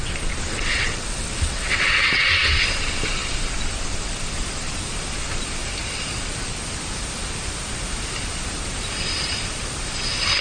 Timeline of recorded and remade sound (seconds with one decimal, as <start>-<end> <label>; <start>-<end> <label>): 0.0-0.5 recorded; 0.5-2.6 remade; 2.6-10.4 recorded